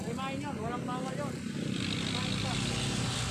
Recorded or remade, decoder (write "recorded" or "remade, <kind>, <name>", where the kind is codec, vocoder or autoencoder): recorded